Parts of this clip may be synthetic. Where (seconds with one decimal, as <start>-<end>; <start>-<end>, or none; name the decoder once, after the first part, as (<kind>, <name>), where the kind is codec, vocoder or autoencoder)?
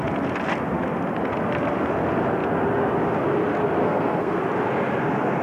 3.8-4.4 (codec, SNAC)